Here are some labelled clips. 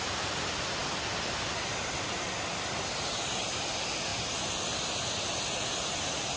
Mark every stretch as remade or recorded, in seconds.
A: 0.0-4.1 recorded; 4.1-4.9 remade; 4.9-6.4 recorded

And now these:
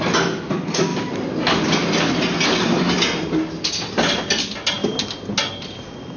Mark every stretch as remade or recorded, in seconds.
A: 0.0-6.2 recorded

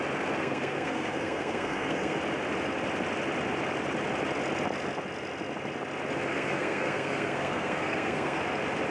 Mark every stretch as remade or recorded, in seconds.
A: 0.0-0.4 recorded; 0.4-2.2 remade; 2.2-6.3 recorded; 6.3-8.4 remade; 8.4-8.9 recorded

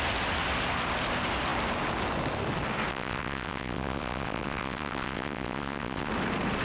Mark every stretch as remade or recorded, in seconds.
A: 0.0-2.9 recorded; 2.9-6.1 remade; 6.1-6.6 recorded

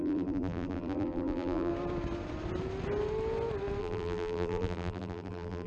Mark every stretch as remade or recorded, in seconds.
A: 0.0-1.7 remade; 1.7-3.8 recorded; 3.8-5.7 remade

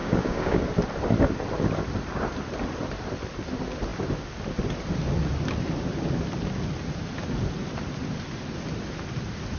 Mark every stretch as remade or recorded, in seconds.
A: 0.0-0.6 remade; 0.6-9.6 recorded

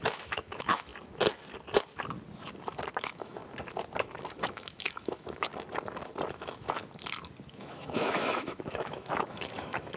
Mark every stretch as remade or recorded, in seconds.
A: 0.0-0.9 remade; 0.9-3.0 recorded; 3.0-3.4 remade; 3.4-4.5 recorded; 4.5-5.5 remade; 5.5-6.3 recorded; 6.3-6.8 remade; 6.8-7.5 recorded; 7.5-10.0 remade